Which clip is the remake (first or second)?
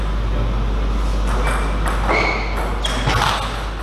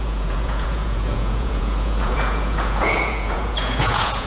second